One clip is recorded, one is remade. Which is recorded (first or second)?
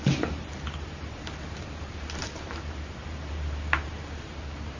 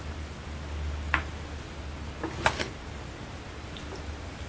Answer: second